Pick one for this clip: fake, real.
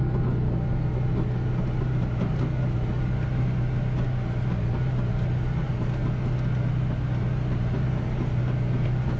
real